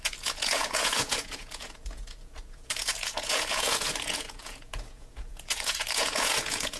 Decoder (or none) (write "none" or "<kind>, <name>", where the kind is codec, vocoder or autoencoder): vocoder, Vocos